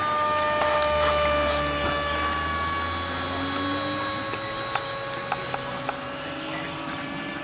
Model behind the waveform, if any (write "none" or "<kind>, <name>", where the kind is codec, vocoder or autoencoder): none